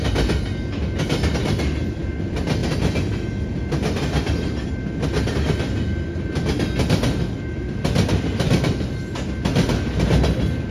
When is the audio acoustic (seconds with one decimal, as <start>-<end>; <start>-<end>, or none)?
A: 0.0-10.7